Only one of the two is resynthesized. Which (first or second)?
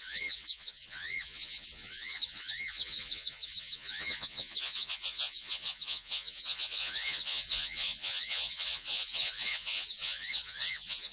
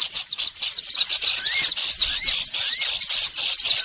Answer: first